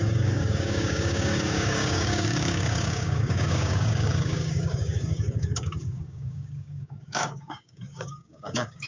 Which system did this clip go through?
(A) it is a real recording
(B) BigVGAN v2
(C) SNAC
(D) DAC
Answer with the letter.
D